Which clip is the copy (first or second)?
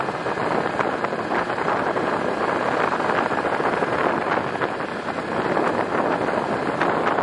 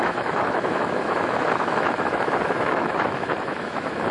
second